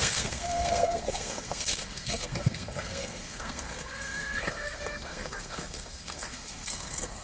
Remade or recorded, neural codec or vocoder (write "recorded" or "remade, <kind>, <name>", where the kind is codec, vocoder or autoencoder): remade, codec, SNAC